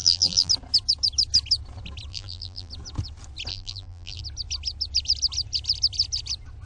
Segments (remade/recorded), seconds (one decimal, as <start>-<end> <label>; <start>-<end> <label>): 0.0-0.5 remade; 0.5-2.1 recorded; 2.1-2.7 remade; 2.7-3.5 recorded; 3.5-4.2 remade; 4.2-6.7 recorded